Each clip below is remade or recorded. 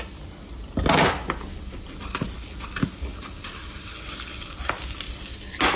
recorded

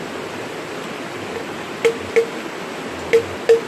recorded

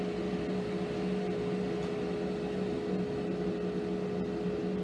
recorded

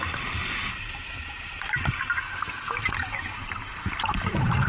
remade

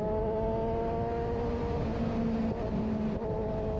recorded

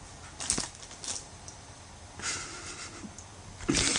recorded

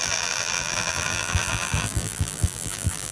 remade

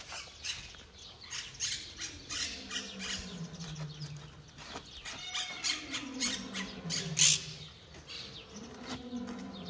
recorded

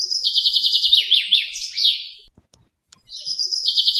recorded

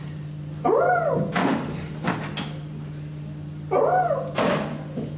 remade